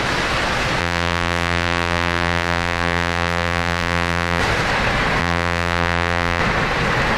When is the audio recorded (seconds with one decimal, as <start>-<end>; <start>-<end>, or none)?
0.0-0.8; 4.4-5.2; 6.4-7.2

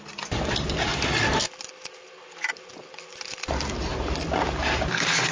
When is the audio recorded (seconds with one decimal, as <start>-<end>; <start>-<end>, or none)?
0.0-0.9; 1.6-5.3

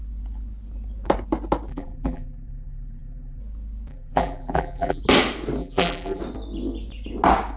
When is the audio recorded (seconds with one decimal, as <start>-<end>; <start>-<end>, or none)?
0.0-1.7; 3.4-3.9; 5.0-5.6; 6.2-7.6

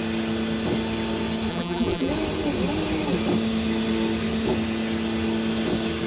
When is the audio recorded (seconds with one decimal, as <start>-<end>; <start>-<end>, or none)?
0.0-1.5; 2.1-6.1

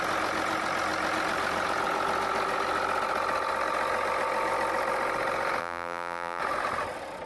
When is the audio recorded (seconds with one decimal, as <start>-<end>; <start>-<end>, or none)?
0.0-5.6; 6.4-7.3